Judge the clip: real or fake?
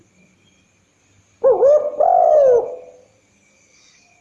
real